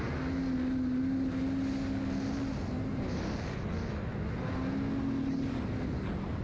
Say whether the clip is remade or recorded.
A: recorded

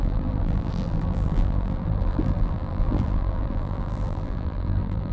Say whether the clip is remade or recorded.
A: remade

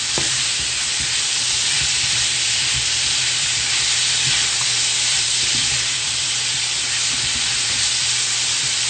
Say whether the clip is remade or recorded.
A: remade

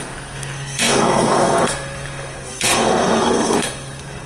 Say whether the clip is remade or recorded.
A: remade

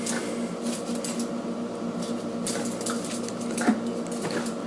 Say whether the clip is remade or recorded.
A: recorded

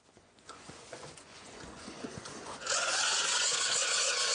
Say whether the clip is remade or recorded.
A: remade